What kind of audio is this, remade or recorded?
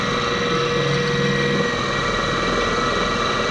recorded